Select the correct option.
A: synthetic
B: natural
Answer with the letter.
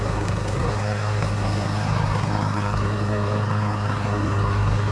A